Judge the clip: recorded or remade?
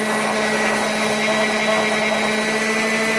recorded